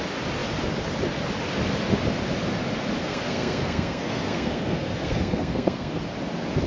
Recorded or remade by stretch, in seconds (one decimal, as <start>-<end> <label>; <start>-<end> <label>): 0.0-3.0 recorded; 3.0-6.0 remade; 6.0-6.7 recorded